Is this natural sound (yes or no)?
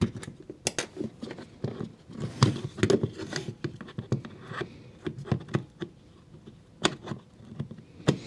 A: yes